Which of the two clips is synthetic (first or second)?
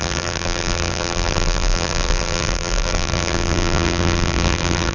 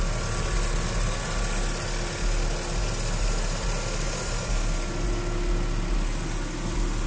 first